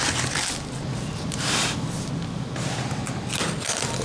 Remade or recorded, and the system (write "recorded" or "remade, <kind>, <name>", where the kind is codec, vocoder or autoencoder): recorded